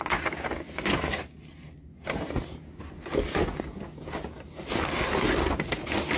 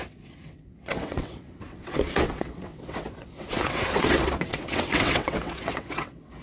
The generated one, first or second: second